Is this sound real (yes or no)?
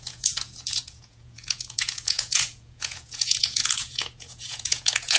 no